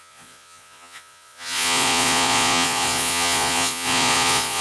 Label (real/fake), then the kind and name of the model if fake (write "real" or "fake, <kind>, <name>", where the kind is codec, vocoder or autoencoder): fake, vocoder, Vocos